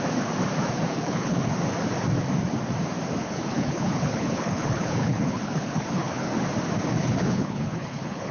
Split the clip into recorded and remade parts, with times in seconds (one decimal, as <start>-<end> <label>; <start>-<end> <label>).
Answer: 0.0-0.9 recorded; 0.9-1.6 remade; 1.6-3.2 recorded; 3.2-6.3 remade; 6.3-7.0 recorded; 7.0-8.3 remade